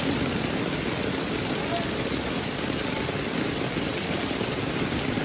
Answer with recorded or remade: remade